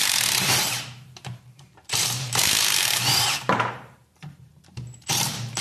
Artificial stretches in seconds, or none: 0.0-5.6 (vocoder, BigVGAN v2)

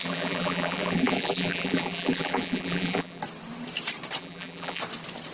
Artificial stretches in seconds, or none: 0.0-3.2 (vocoder, BigVGAN v2); 4.2-4.8

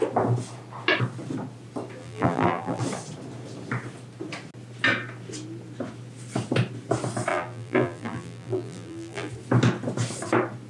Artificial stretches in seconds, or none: 2.0-2.8 (vocoder, BigVGAN v2); 7.3-9.3

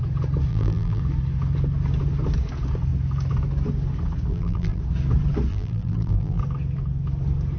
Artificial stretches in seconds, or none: 0.5-1.0 (vocoder, BigVGAN v2); 4.3-4.8; 5.5-6.4

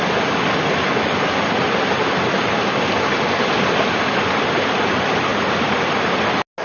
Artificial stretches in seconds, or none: 5.3-6.1 (vocoder, BigVGAN v2)

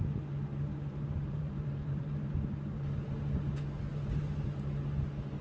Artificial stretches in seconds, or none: 0.7-2.3 (vocoder, BigVGAN v2); 3.9-4.4